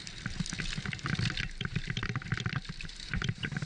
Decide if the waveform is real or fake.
real